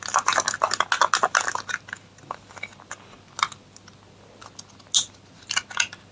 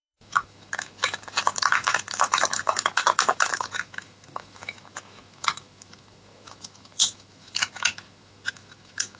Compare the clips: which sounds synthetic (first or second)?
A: second